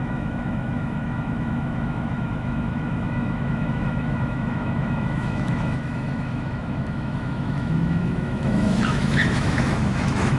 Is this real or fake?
fake